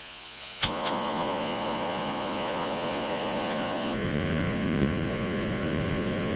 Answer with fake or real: fake